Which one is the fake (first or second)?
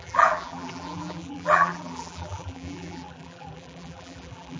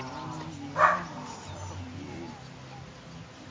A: first